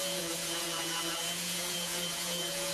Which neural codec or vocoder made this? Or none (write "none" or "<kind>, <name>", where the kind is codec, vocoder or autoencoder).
vocoder, Vocos